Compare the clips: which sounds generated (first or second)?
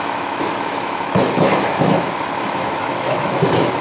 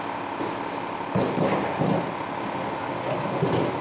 first